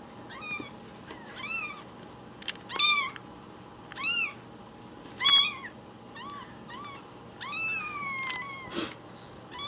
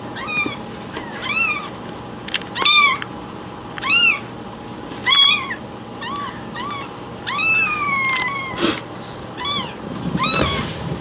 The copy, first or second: second